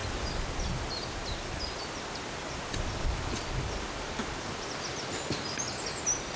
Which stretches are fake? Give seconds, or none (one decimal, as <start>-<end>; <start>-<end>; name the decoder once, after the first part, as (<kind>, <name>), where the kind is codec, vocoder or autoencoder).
none